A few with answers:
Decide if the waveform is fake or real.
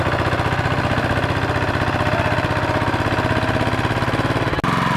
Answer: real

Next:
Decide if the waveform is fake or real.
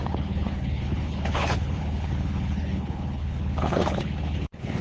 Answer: fake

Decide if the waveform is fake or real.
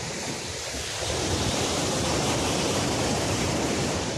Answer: fake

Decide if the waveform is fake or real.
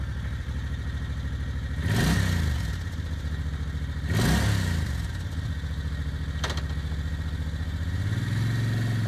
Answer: real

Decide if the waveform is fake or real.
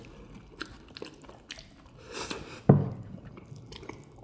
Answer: real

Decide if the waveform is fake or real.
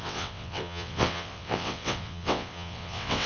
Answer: fake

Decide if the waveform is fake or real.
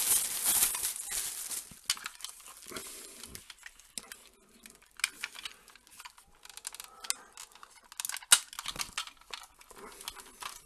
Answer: real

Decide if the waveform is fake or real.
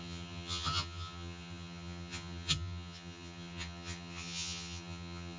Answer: fake